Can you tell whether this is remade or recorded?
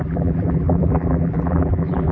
remade